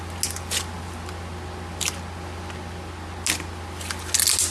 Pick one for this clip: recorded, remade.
recorded